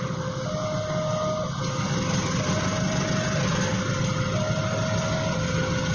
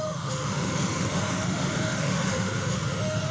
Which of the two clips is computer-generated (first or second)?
second